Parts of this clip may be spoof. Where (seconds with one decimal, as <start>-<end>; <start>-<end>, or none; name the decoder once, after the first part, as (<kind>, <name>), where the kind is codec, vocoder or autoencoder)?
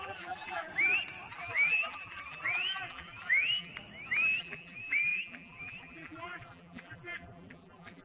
0.0-0.7 (vocoder, BigVGAN v2); 1.3-3.7; 4.4-8.0